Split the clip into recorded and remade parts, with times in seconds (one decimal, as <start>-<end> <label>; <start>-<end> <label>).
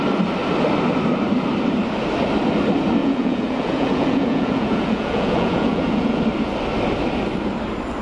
0.0-3.0 recorded; 3.0-6.2 remade; 6.2-8.0 recorded